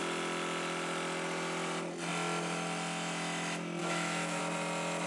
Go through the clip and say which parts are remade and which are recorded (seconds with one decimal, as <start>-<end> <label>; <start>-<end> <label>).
0.0-3.8 recorded; 3.8-4.4 remade; 4.4-5.1 recorded